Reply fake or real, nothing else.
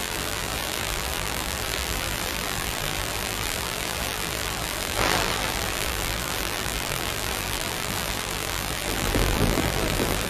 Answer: fake